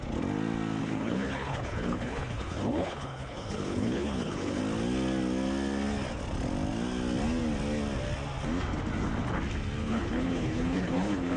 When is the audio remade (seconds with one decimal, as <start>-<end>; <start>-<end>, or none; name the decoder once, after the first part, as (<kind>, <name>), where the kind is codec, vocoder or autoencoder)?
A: 0.8-4.6 (codec, HILCodec); 9.8-11.4